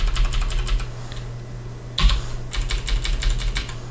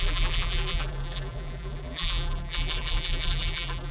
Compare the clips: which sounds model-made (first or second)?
second